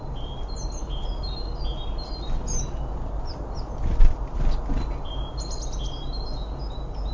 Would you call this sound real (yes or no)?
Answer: yes